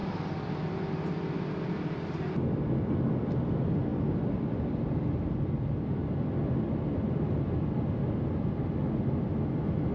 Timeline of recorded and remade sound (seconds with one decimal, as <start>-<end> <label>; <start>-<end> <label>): 0.0-2.3 remade; 2.3-3.9 recorded; 3.9-5.0 remade; 5.0-9.9 recorded